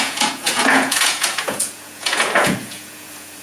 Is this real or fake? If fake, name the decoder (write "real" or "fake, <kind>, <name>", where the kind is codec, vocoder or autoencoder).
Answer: fake, vocoder, Vocos